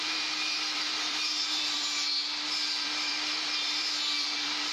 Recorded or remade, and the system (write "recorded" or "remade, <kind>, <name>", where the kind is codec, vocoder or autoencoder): remade, vocoder, BigVGAN v2